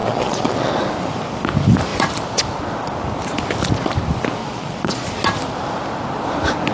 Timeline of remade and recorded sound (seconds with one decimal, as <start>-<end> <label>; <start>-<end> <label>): 0.0-0.7 remade; 0.7-4.4 recorded; 4.4-5.1 remade; 5.1-6.7 recorded